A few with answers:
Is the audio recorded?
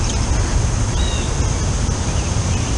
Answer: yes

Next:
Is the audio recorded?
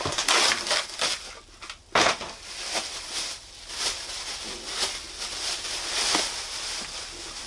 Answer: yes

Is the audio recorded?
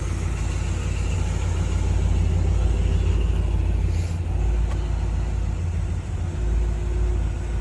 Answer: yes